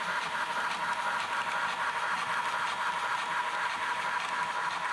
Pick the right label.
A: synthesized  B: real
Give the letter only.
B